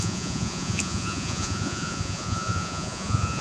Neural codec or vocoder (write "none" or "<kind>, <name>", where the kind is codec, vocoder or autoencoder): vocoder, Vocos